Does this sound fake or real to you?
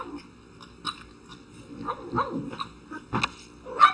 real